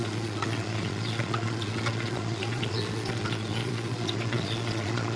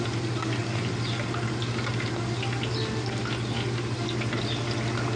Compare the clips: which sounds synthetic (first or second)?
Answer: first